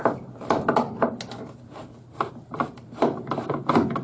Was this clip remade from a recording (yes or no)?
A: no